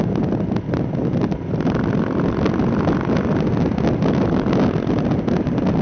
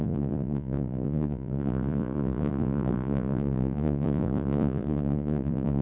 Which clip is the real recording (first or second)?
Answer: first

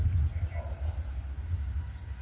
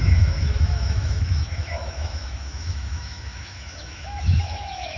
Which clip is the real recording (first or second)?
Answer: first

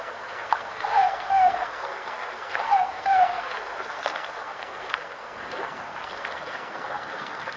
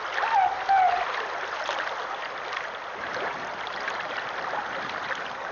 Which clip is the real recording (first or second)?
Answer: second